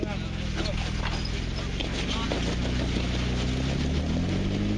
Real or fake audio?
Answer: real